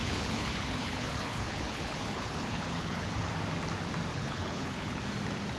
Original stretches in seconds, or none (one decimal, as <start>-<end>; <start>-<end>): 3.3-4.1; 5.0-5.6